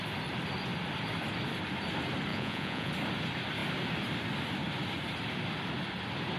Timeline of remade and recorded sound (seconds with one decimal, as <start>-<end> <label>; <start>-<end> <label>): 0.0-2.3 recorded; 2.3-2.9 remade; 2.9-6.4 recorded